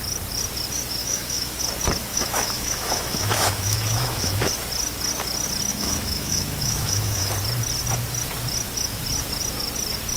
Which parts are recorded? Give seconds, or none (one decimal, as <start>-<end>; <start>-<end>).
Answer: 0.0-1.0; 1.6-2.1; 4.5-5.7; 7.3-10.2